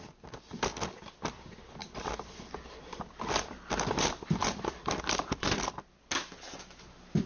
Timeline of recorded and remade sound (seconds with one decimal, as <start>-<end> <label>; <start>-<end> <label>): 0.0-1.8 recorded; 1.8-2.8 remade; 2.8-4.4 recorded; 4.4-6.0 remade; 6.0-7.3 recorded